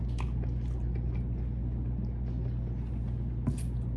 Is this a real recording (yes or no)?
yes